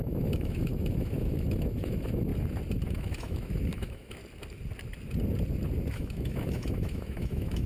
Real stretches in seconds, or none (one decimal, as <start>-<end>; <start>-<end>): 2.3-2.9; 4.2-5.9